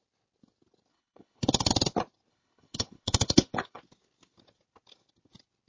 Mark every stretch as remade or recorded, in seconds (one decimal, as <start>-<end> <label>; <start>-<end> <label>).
0.0-0.9 recorded; 0.9-1.7 remade; 1.7-2.3 recorded; 2.3-3.8 remade; 3.8-5.7 recorded